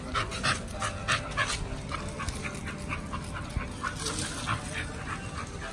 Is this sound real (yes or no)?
yes